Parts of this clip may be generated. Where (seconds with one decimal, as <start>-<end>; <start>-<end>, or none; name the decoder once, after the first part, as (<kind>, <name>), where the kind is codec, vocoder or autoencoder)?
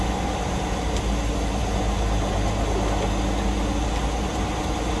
none